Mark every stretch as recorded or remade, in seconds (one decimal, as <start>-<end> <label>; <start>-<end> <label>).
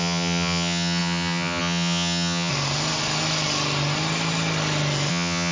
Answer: 0.0-2.5 remade; 2.5-5.1 recorded; 5.1-5.5 remade